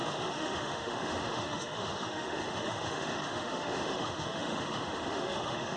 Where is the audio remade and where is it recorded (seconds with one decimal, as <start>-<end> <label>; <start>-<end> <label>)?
0.0-5.8 remade